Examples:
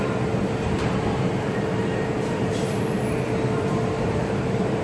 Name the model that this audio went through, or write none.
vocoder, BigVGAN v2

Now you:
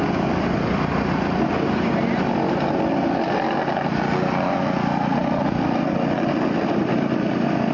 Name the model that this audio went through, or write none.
none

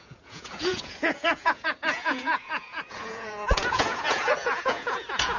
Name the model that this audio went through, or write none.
vocoder, Vocos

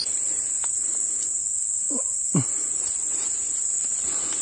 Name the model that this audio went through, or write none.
none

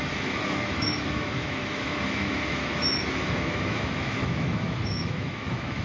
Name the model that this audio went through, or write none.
autoencoder, DAC-VAE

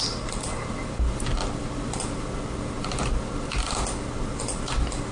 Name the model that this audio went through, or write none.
none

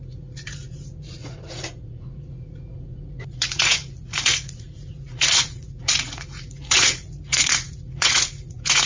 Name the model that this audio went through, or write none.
vocoder, Vocos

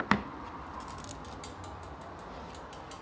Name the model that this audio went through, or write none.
none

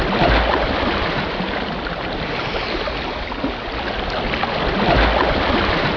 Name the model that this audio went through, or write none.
none